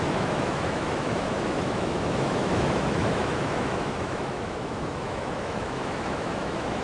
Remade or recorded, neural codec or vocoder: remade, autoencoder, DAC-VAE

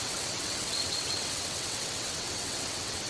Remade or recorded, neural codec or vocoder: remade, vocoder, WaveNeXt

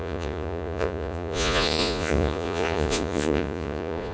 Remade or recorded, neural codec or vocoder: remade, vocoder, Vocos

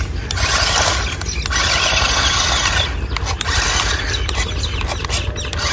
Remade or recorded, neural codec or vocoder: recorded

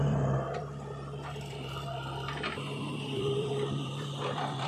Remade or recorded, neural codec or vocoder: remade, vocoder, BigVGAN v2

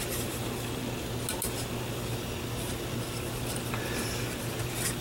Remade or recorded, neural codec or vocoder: recorded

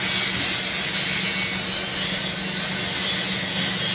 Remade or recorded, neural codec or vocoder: recorded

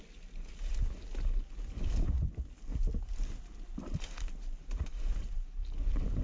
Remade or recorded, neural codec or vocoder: recorded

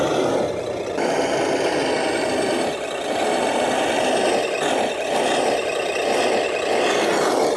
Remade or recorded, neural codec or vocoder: recorded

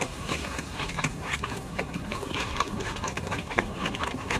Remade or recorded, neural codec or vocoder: remade, codec, SNAC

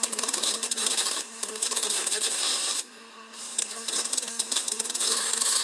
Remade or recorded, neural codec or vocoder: remade, codec, SNAC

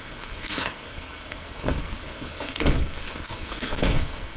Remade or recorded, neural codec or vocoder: remade, codec, SNAC